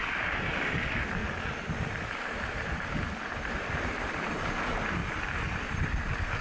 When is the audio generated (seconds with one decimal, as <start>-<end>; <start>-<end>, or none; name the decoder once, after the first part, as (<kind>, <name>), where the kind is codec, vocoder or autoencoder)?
1.2-4.6 (vocoder, BigVGAN v2)